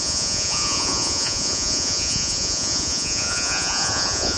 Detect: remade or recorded remade